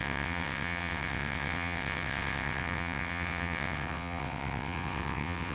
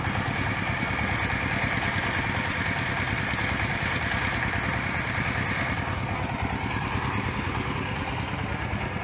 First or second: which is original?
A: second